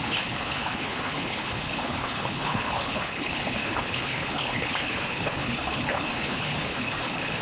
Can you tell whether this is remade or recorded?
remade